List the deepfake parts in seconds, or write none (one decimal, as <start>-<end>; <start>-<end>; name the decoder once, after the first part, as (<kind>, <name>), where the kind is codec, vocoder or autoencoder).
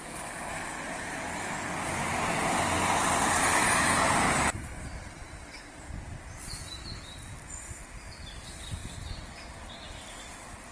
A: none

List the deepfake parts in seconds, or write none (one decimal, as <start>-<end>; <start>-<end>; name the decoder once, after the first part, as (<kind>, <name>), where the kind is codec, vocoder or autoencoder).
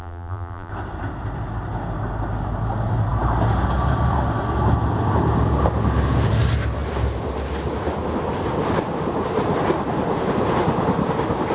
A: 0.0-0.7 (vocoder, BigVGAN v2)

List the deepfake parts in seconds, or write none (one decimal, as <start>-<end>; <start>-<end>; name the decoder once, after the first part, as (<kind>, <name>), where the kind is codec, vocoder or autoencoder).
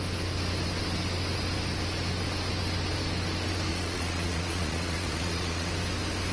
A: 3.7-5.7 (vocoder, Vocos)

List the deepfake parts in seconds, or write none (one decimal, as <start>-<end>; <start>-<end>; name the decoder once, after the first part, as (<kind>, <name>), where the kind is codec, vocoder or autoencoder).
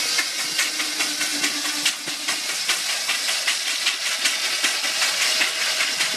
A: none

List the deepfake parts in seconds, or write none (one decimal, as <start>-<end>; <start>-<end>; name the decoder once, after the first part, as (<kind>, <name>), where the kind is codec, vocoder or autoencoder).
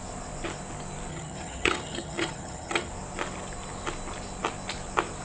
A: 1.1-2.9 (vocoder, HiFi-GAN)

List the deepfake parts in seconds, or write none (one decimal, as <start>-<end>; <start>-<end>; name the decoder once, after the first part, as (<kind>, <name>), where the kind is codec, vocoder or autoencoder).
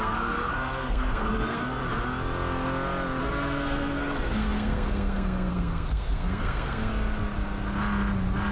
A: 0.0-1.8 (codec, SNAC); 3.2-6.9